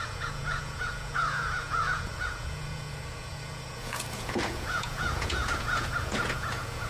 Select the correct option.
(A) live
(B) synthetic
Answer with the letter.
B